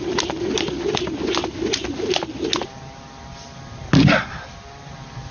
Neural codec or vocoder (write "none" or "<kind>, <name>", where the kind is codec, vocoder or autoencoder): none